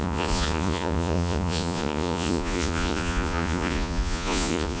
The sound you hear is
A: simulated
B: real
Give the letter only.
A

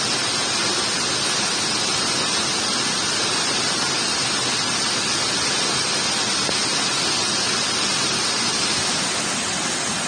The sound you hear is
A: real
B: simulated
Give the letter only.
A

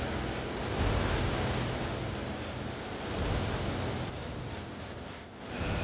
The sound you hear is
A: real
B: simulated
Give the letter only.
A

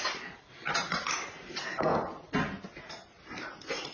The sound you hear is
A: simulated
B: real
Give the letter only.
B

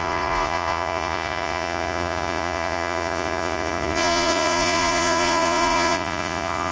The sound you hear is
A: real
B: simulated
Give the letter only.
B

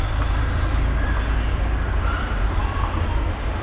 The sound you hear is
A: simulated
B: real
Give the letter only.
B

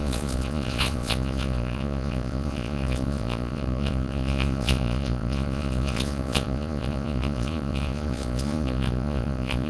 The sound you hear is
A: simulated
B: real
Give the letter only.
A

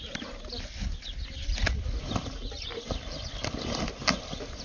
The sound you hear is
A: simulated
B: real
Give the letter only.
B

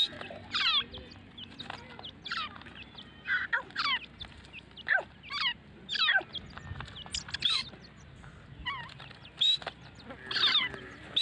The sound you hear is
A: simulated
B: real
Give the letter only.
B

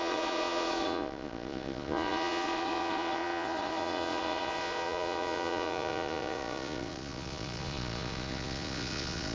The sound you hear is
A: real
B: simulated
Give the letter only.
B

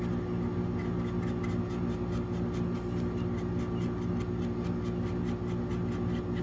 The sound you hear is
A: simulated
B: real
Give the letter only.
B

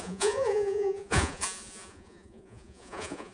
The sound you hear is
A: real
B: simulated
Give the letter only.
B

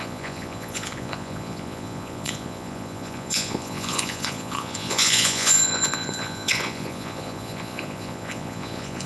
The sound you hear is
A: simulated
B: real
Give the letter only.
A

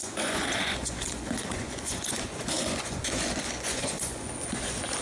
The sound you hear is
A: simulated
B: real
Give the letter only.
A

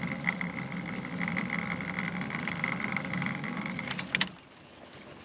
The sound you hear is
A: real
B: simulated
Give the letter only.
A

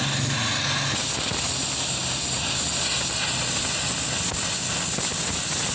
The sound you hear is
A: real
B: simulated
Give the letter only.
A